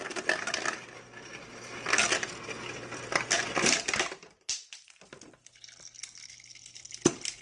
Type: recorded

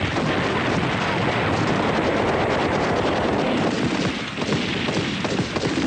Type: recorded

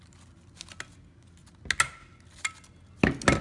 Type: recorded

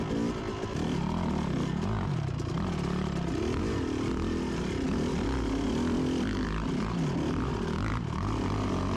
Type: recorded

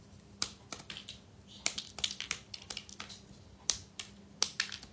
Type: recorded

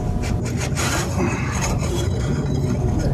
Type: recorded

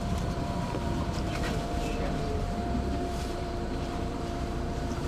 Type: remade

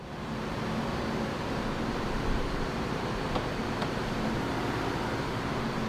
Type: remade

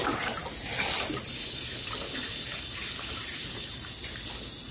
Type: recorded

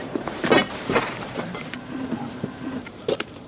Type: remade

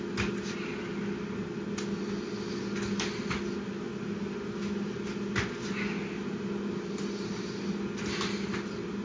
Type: recorded